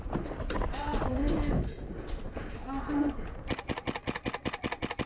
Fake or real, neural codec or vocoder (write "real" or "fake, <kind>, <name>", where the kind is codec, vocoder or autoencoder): real